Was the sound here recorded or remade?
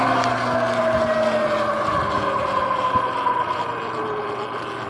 recorded